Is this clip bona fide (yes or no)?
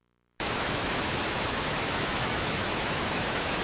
no